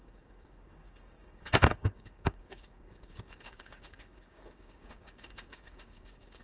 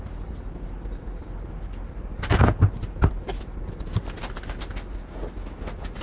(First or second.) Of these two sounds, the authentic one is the second